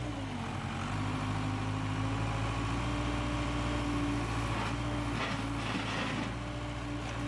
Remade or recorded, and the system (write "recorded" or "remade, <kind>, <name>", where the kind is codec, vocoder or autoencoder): recorded